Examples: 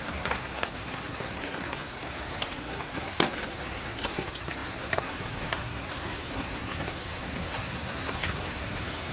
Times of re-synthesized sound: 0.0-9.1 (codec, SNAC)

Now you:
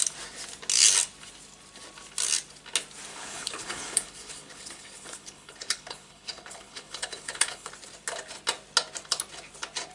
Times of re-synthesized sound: 3.1-7.7 (codec, HILCodec)

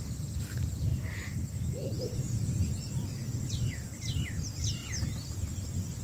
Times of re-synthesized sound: 0.0-0.9 (vocoder, BigVGAN v2); 2.0-3.2; 4.2-4.8